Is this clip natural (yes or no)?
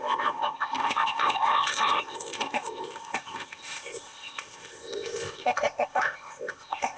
no